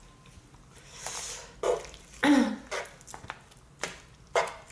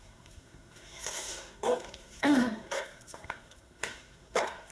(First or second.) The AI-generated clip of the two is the second